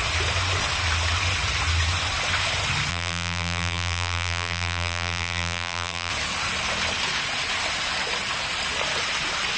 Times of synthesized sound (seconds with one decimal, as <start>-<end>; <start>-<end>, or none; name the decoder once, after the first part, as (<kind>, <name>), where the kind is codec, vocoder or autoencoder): 2.9-6.1 (vocoder, BigVGAN v2)